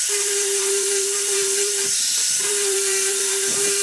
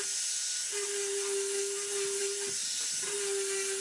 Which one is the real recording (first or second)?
second